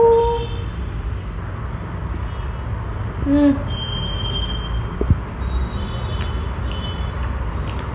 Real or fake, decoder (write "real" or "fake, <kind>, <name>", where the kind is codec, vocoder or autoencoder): real